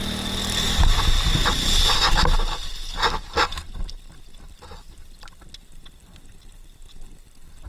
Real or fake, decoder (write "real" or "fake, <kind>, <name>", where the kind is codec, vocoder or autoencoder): real